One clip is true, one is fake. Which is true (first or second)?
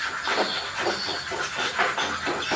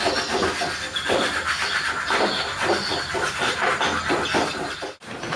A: first